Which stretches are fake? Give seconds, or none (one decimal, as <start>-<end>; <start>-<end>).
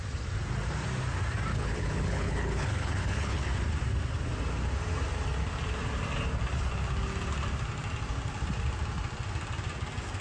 1.5-3.5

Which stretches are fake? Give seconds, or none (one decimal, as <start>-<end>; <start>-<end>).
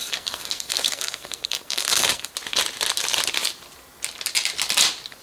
0.0-2.3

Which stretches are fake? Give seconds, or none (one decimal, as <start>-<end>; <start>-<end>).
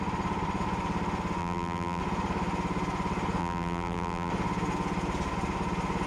1.4-2.0; 3.4-4.3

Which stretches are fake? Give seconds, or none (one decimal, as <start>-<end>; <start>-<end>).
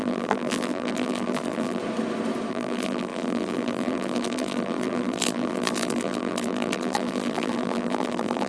0.0-1.8; 2.5-8.5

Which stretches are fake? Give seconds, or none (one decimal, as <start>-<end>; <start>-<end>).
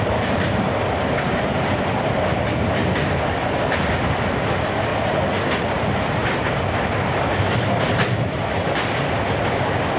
0.0-2.8; 3.9-4.9; 5.6-10.0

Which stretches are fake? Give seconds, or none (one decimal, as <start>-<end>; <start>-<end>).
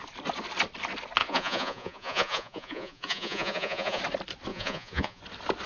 1.2-4.0; 4.5-5.2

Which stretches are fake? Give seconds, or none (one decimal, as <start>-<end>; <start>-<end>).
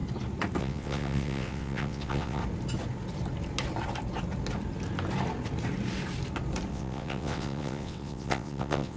0.6-2.4; 6.7-9.0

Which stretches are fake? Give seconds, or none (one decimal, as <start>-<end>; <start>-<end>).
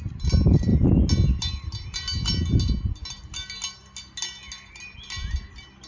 none